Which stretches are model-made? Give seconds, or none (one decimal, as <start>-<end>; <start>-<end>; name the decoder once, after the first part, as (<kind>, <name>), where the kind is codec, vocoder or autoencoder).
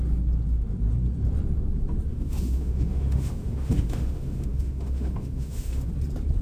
2.1-5.9 (autoencoder, DAC-VAE)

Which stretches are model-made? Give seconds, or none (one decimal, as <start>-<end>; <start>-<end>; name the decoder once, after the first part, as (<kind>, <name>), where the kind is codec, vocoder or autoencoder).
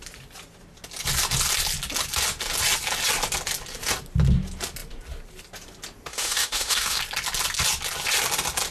6.1-7.0 (autoencoder, DAC-VAE)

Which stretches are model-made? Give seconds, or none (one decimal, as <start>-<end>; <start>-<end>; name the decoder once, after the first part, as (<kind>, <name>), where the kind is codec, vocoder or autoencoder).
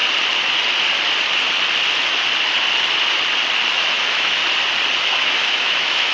3.7-4.4 (autoencoder, DAC-VAE); 5.0-6.1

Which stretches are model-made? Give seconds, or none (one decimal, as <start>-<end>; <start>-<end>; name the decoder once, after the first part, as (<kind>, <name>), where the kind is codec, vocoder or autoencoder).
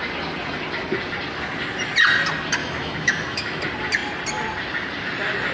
2.6-3.6 (autoencoder, DAC-VAE)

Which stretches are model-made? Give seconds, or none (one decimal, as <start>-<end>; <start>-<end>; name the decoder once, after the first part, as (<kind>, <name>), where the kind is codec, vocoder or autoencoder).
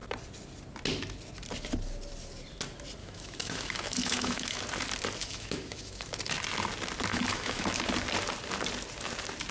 3.0-4.6 (autoencoder, DAC-VAE); 5.2-6.2; 7.1-7.8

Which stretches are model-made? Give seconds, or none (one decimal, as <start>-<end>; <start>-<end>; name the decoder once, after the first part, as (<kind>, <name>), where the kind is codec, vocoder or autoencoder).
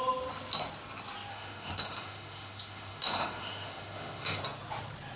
1.3-4.4 (autoencoder, DAC-VAE)